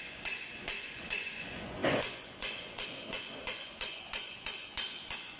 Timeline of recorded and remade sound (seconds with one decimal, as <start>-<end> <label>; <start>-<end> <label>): 0.0-5.4 remade